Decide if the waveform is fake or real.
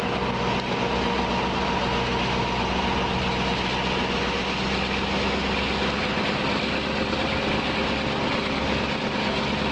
real